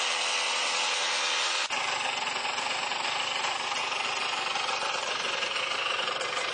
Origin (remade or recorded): recorded